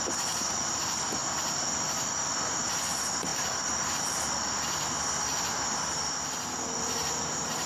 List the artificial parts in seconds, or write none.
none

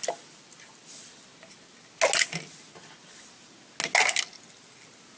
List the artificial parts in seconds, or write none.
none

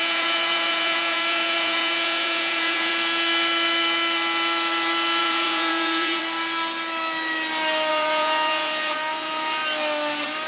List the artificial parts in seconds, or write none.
0.0-2.9; 5.2-6.2; 7.9-9.6